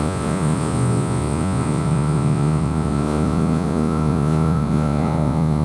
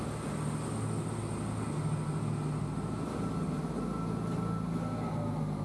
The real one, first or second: second